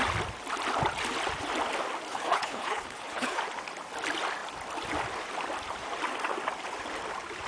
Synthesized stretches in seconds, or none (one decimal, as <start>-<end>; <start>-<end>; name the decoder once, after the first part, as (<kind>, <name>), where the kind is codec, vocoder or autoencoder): 2.1-3.4 (codec, HILCodec)